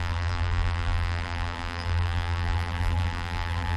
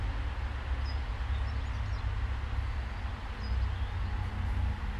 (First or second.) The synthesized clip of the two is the first